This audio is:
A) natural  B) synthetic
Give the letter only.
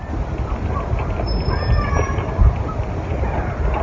A